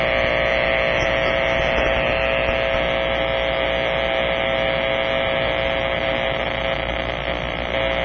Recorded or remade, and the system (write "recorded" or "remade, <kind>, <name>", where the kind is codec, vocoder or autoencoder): recorded